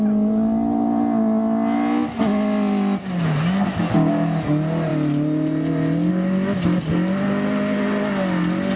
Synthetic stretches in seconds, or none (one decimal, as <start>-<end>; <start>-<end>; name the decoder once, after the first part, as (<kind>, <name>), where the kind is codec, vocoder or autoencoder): none